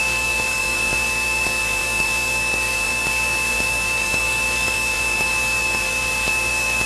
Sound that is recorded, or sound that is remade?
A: remade